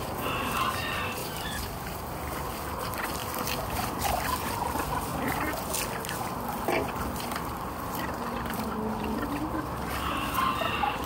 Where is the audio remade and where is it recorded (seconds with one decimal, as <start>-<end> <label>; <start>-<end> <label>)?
0.0-1.2 recorded; 1.2-1.8 remade; 1.8-11.1 recorded

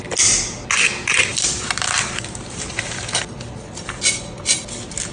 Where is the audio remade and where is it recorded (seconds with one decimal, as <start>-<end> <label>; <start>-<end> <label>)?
0.0-1.3 recorded; 1.3-3.2 remade; 3.2-5.1 recorded

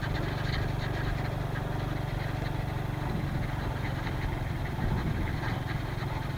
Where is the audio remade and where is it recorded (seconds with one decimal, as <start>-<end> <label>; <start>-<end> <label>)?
0.0-6.4 recorded

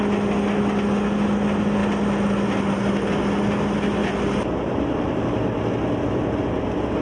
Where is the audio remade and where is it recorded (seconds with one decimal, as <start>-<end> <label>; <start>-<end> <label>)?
0.0-4.0 recorded; 4.0-5.6 remade; 5.6-7.0 recorded

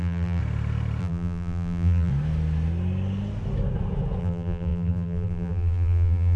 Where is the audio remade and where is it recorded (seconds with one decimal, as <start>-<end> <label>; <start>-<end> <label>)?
0.0-0.4 remade; 0.4-1.0 recorded; 1.0-2.1 remade; 2.1-4.2 recorded; 4.2-6.4 remade

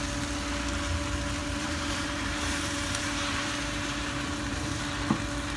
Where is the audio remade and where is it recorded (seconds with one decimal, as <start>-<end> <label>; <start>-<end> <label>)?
0.0-1.4 recorded; 1.4-4.8 remade; 4.8-5.6 recorded